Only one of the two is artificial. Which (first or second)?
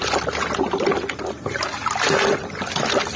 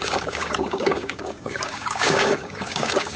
second